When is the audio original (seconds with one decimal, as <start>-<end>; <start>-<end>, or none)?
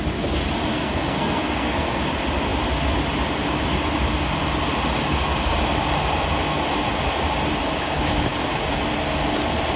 0.0-0.7; 2.0-9.8